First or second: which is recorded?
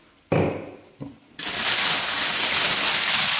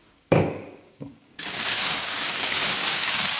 first